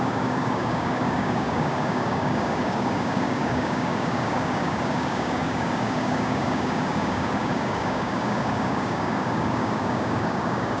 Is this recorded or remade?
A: remade